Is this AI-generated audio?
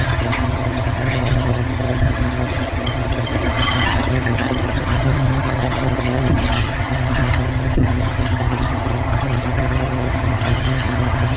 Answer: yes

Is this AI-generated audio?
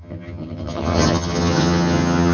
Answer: yes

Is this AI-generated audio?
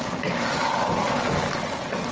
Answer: no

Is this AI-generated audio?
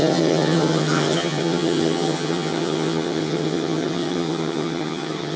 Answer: yes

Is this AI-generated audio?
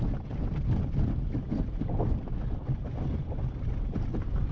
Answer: no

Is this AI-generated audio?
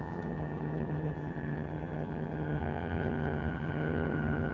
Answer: yes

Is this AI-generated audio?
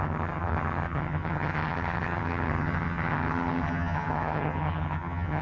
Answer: yes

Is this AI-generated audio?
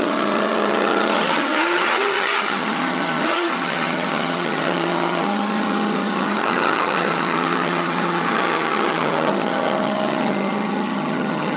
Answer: yes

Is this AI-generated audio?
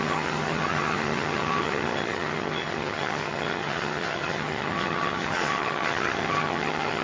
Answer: yes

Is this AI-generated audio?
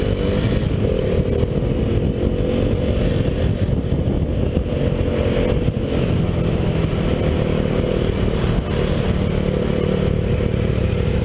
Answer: no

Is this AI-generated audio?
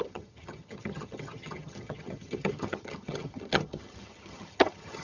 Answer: yes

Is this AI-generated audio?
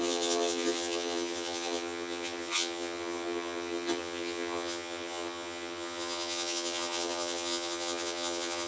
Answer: yes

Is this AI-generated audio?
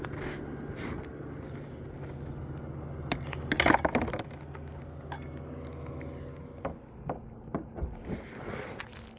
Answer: no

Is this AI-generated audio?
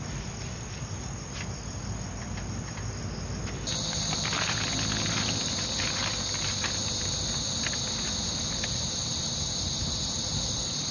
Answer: no